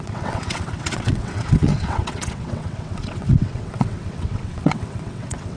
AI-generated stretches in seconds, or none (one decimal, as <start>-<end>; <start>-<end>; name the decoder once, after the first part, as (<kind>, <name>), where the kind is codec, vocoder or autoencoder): 0.0-5.6 (vocoder, WaveNeXt)